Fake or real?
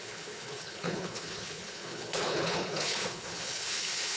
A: fake